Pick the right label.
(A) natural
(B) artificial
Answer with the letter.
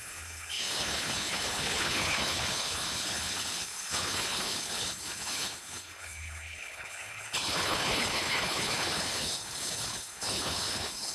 B